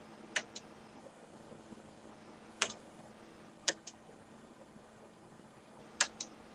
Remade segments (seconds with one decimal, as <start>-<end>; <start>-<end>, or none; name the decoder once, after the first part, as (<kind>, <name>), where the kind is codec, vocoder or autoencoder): 1.0-2.1 (codec, SNAC); 2.5-3.1; 3.5-5.8